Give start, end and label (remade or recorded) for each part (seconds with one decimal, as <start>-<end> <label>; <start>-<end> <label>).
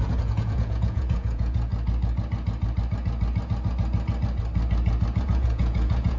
0.0-1.7 remade; 1.7-5.2 recorded; 5.2-6.2 remade